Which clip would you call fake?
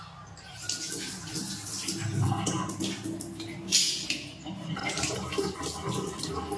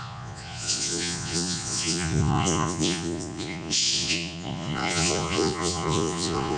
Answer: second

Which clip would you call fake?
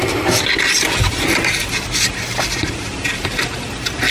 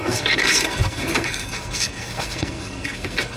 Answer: second